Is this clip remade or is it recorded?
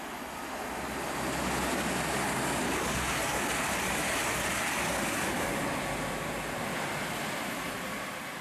recorded